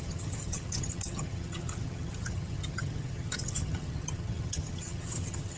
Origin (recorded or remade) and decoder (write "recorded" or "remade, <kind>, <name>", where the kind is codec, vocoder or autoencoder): remade, vocoder, HiFi-GAN